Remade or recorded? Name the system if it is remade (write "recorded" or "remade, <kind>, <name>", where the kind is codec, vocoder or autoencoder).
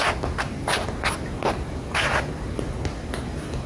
recorded